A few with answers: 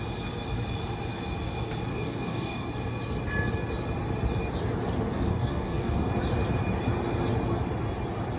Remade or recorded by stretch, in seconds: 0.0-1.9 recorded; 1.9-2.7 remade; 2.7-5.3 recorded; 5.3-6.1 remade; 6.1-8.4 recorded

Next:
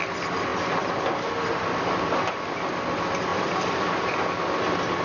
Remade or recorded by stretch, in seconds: 0.0-0.5 recorded; 0.5-2.3 remade; 2.3-3.3 recorded; 3.3-3.9 remade; 3.9-5.0 recorded

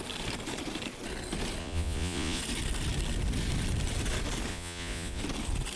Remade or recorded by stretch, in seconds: 0.0-1.6 recorded; 1.6-2.4 remade; 2.4-4.5 recorded; 4.5-5.2 remade; 5.2-5.8 recorded

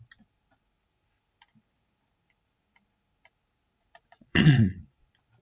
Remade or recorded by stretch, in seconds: 0.0-4.1 recorded; 4.1-5.0 remade; 5.0-5.4 recorded

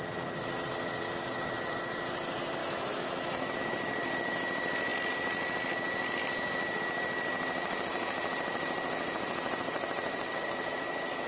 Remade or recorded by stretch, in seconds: 0.0-2.6 recorded; 2.6-3.6 remade; 3.6-11.3 recorded